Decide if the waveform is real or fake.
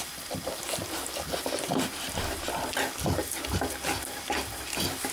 real